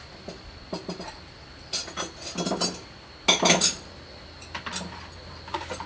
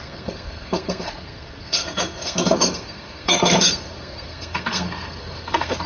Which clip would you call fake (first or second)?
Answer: second